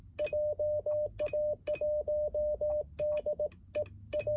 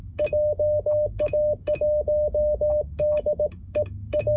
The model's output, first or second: second